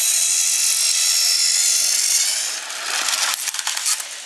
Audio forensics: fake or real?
real